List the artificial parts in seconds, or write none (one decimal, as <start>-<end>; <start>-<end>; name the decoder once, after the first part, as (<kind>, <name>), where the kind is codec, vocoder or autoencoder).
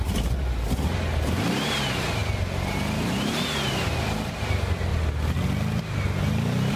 none